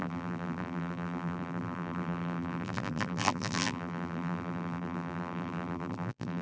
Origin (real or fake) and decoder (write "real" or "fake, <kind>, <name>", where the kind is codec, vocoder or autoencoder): fake, vocoder, BigVGAN v2